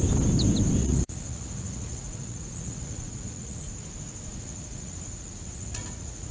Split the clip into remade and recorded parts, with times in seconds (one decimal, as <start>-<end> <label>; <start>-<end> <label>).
0.0-0.8 recorded; 0.8-3.7 remade; 3.7-4.3 recorded; 4.3-6.3 remade